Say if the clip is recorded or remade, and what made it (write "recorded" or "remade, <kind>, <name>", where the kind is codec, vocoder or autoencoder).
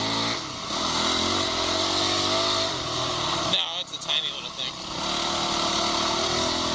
recorded